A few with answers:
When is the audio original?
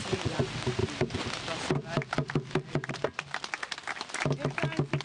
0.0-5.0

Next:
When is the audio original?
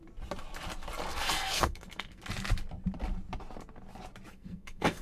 0.0-1.1; 2.2-4.3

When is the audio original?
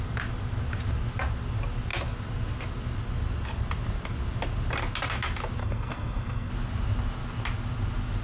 0.0-5.6; 6.5-8.2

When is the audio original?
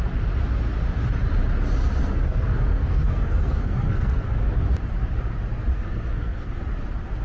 0.0-2.0; 4.5-5.7; 6.6-7.2